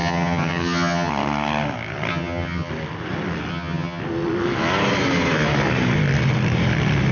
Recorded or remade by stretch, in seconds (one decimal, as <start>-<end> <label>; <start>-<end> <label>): 0.0-1.1 remade; 1.1-2.1 recorded; 2.1-2.7 remade; 2.7-3.5 recorded; 3.5-4.0 remade; 4.0-7.1 recorded